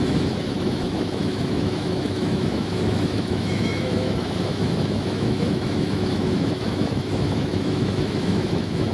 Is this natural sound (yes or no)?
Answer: no